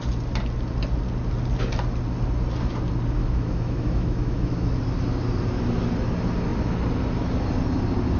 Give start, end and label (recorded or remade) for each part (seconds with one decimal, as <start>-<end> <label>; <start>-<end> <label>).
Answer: 0.0-3.2 recorded; 3.2-4.8 remade; 4.8-8.2 recorded